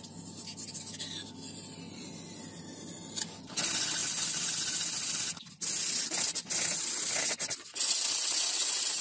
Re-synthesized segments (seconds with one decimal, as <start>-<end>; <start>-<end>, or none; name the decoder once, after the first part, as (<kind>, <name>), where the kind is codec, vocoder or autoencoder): none